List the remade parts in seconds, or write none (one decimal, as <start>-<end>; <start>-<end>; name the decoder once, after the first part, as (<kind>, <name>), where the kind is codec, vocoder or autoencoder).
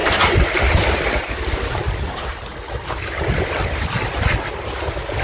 none